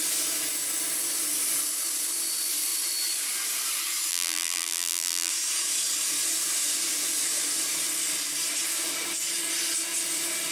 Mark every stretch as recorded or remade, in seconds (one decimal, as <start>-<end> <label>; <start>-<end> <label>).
0.0-4.1 recorded; 4.1-5.3 remade; 5.3-10.5 recorded